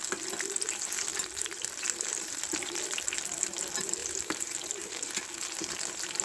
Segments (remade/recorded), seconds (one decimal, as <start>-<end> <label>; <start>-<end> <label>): 0.0-1.1 recorded; 1.1-2.8 remade; 2.8-4.0 recorded; 4.0-5.1 remade; 5.1-6.2 recorded